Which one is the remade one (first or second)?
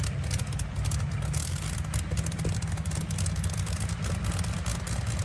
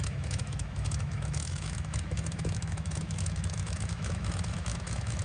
second